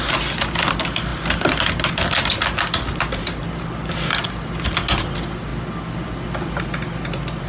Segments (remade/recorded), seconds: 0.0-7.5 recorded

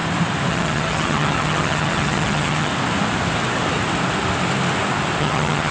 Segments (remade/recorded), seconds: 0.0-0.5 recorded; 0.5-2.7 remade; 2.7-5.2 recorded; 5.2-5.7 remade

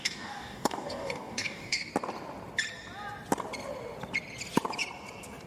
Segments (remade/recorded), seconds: 0.0-1.9 remade; 1.9-5.5 recorded

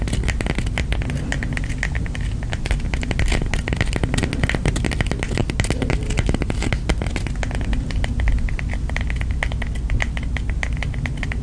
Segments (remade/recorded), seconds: 0.0-11.4 recorded

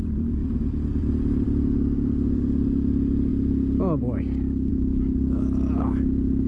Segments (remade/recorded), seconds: 0.0-6.5 recorded

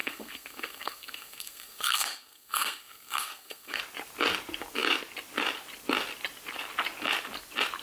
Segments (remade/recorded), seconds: 0.0-3.8 remade; 3.8-7.8 recorded